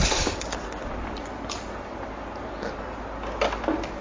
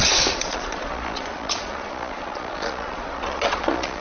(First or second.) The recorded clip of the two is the first